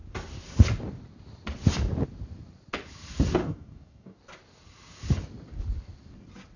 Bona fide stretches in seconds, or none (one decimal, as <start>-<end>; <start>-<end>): 0.0-3.4; 4.2-6.6